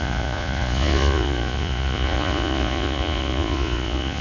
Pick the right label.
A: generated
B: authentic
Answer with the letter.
A